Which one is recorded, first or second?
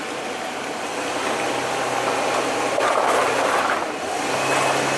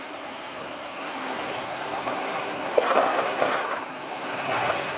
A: first